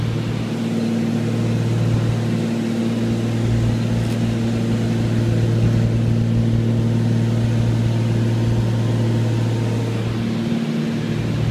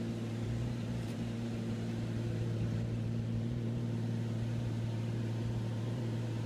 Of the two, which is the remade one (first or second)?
second